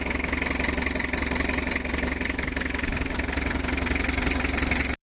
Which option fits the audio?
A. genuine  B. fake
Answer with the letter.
A